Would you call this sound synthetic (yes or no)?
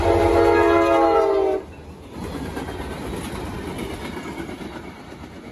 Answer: no